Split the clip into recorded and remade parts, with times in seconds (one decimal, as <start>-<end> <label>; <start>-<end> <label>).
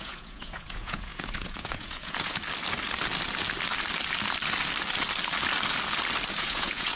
0.0-2.4 remade; 2.4-6.3 recorded; 6.3-7.0 remade